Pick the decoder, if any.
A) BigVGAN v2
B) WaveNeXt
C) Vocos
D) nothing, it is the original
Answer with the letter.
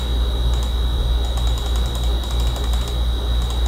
D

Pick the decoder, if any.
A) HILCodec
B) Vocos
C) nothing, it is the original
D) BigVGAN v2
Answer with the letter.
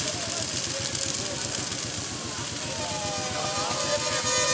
C